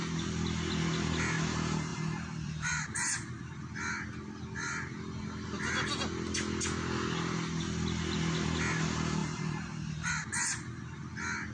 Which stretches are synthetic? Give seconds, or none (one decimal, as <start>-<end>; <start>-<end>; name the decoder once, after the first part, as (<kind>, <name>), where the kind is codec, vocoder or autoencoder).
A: 1.9-3.4 (vocoder, BigVGAN v2); 9.2-10.1